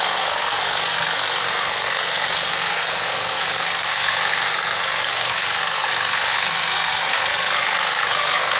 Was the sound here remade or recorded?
remade